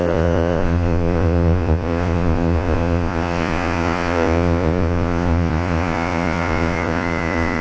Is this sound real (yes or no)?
no